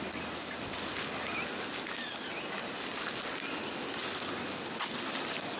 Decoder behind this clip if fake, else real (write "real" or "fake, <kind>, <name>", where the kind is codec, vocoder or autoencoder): real